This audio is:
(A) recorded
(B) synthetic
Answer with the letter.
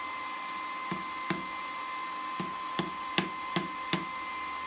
A